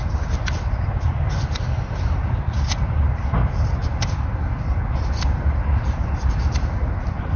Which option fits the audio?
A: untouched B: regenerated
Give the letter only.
A